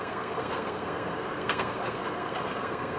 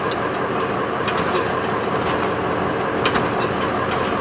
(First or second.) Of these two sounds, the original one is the second